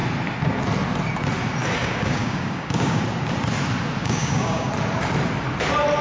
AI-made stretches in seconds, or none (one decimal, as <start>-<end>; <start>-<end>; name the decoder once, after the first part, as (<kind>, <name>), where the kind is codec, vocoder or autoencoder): 1.8-3.0 (codec, DAC); 4.0-4.7